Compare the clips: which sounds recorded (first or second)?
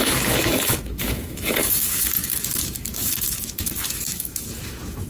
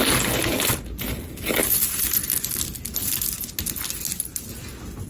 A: second